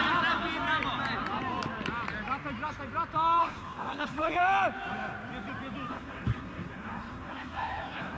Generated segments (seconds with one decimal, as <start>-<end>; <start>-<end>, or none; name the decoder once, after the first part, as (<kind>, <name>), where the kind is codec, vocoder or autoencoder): 3.4-4.4 (codec, SNAC); 5.9-8.2